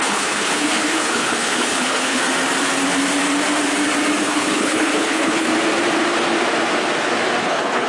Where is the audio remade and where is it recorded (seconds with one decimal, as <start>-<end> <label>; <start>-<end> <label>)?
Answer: 0.0-2.2 remade; 2.2-4.2 recorded; 4.2-5.5 remade; 5.5-7.4 recorded; 7.4-7.9 remade